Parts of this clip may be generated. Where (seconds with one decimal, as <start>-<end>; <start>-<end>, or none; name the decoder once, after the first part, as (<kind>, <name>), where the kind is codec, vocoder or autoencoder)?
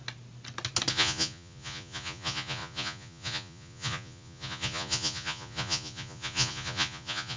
0.9-7.4 (vocoder, Vocos)